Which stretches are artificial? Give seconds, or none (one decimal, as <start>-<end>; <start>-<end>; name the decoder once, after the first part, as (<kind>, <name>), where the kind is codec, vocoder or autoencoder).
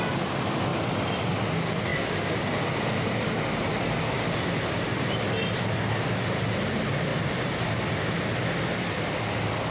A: none